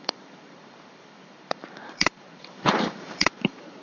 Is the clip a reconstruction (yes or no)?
yes